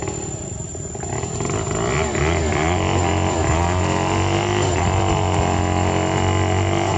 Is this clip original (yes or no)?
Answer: yes